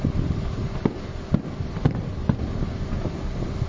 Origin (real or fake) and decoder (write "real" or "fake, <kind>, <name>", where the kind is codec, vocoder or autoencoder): real